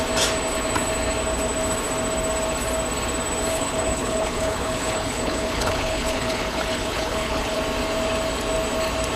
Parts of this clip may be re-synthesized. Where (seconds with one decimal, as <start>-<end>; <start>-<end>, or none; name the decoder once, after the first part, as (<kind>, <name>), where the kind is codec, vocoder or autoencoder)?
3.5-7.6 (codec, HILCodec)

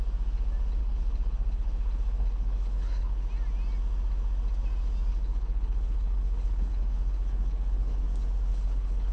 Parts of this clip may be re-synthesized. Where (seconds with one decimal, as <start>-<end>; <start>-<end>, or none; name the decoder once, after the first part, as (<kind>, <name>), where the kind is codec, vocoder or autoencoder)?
0.8-3.3 (codec, HILCodec); 5.1-8.0; 8.5-9.1

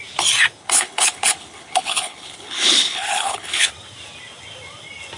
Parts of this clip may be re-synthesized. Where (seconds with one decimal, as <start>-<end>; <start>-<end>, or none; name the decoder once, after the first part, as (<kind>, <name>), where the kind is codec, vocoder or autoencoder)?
0.6-3.7 (codec, HILCodec)